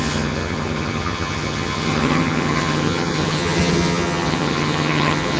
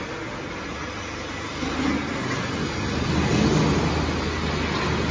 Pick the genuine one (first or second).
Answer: second